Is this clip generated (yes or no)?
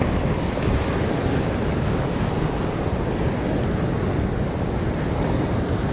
no